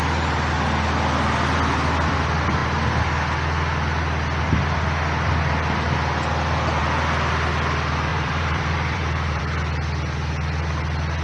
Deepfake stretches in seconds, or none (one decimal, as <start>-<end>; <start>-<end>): 8.1-9.4